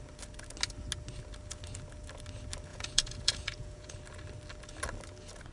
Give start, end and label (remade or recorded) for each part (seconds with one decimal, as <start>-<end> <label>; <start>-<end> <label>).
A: 0.0-2.7 recorded; 2.7-3.9 remade; 3.9-5.5 recorded